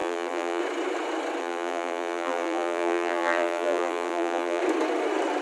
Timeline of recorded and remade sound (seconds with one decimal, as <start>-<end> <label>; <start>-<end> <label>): 0.0-0.6 remade; 0.6-1.4 recorded; 1.4-4.6 remade; 4.6-5.4 recorded

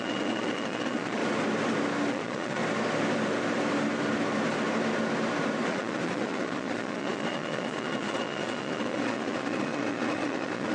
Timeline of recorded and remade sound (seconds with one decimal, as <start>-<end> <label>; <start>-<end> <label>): 0.0-1.2 remade; 1.2-2.1 recorded; 2.1-2.6 remade; 2.6-5.7 recorded; 5.7-10.7 remade